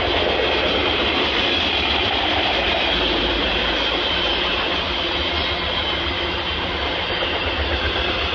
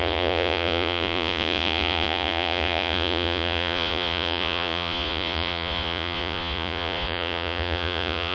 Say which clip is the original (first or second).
first